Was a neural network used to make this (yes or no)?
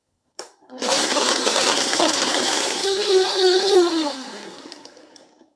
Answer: yes